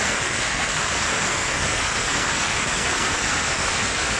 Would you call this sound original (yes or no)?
no